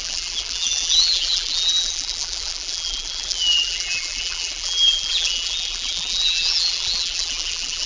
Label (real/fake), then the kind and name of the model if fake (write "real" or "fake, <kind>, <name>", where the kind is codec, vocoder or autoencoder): fake, vocoder, BigVGAN v2